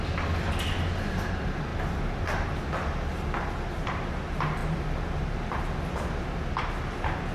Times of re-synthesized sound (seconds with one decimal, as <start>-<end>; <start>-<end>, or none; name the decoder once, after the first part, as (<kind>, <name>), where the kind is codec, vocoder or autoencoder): none